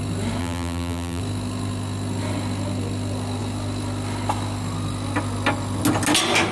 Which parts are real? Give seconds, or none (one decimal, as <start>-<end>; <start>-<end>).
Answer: 0.0-0.4; 1.2-6.5